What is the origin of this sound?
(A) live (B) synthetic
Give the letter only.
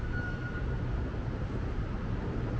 A